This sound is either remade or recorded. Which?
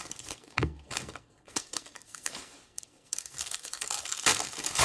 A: remade